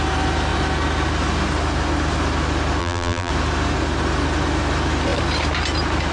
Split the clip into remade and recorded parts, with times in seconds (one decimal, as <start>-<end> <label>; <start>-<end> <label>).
0.0-2.8 recorded; 2.8-3.3 remade; 3.3-6.1 recorded